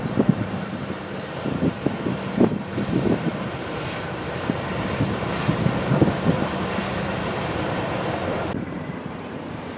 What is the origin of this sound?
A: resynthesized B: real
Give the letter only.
A